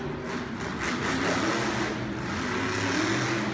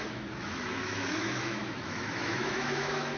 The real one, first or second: first